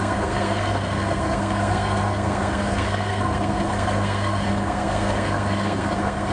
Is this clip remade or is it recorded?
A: remade